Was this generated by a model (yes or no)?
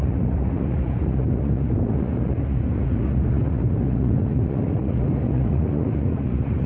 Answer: yes